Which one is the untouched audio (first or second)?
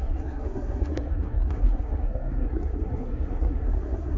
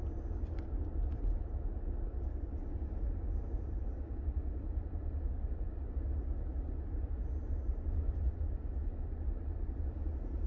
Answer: second